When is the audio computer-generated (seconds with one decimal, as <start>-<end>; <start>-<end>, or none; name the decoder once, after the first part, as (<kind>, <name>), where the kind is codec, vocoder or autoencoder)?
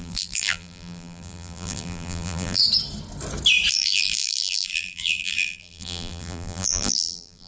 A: 0.0-2.6 (vocoder, BigVGAN v2); 3.7-7.5